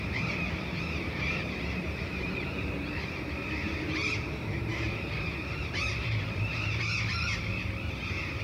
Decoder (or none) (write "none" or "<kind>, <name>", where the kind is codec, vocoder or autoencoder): vocoder, BigVGAN v2